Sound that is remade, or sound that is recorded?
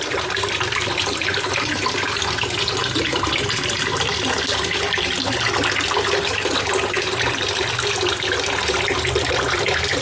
recorded